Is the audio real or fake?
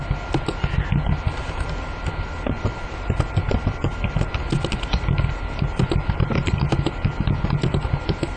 real